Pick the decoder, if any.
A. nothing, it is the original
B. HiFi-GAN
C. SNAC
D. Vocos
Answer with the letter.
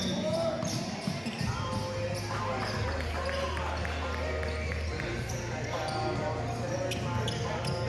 A